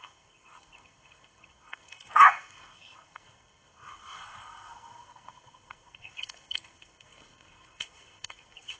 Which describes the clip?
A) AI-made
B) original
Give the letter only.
A